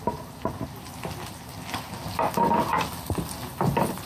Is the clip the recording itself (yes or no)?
yes